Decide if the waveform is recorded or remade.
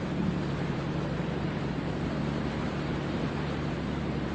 remade